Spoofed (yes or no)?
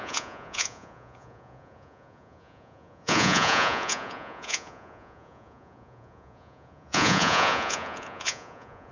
yes